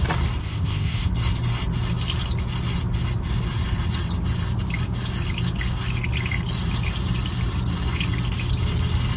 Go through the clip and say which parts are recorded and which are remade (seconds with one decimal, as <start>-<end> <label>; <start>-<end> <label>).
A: 0.0-0.4 recorded; 0.4-1.1 remade; 1.1-9.2 recorded